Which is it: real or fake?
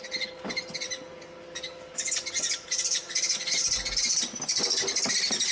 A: fake